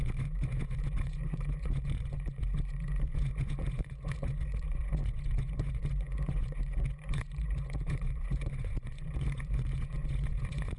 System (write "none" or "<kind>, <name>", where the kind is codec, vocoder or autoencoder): vocoder, Vocos